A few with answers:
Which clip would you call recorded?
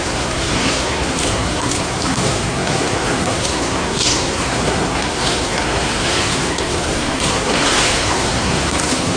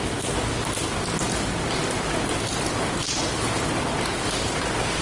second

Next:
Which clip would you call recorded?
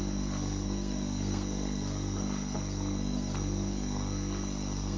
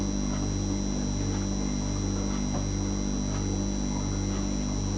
second